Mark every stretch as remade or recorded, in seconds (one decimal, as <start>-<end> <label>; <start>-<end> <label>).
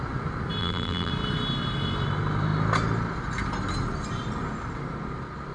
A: 0.0-0.6 recorded; 0.6-1.1 remade; 1.1-5.5 recorded